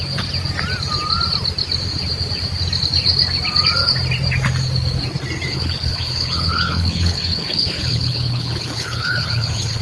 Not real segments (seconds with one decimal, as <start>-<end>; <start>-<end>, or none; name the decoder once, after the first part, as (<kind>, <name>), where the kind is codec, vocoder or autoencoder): 5.5-9.8 (codec, HILCodec)